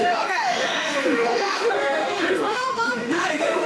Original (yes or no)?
no